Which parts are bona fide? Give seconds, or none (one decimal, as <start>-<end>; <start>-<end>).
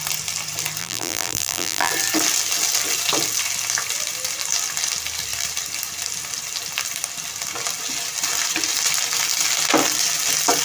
0.0-0.8; 1.9-10.6